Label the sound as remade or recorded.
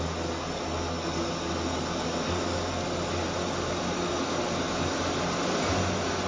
recorded